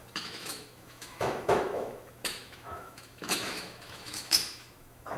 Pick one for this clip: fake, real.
fake